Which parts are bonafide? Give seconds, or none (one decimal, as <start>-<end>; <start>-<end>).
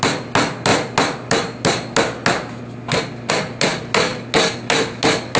0.0-5.4